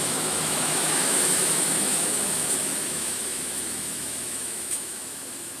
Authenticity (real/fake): fake